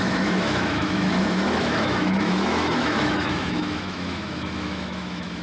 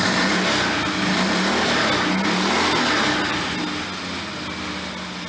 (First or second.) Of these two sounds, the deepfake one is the first